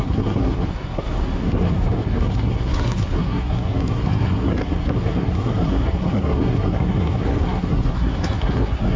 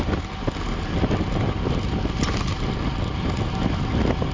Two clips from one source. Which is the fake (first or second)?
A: first